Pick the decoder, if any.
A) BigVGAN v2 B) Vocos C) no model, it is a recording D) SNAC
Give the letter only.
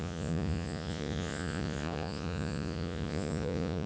B